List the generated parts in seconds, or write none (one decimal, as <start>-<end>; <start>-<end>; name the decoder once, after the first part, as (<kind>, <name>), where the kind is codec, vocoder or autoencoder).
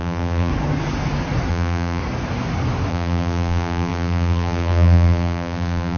0.0-0.5 (vocoder, BigVGAN v2); 1.5-2.0; 2.9-6.0